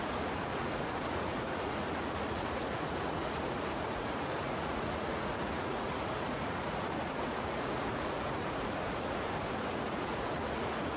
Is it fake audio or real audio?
fake